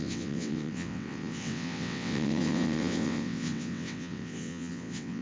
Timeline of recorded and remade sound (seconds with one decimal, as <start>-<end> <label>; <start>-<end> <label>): 0.0-5.2 remade